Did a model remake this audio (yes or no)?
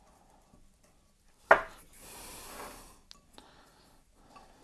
no